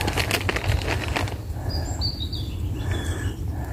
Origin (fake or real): real